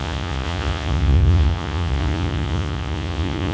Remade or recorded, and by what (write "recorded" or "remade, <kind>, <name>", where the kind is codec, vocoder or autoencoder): remade, vocoder, Vocos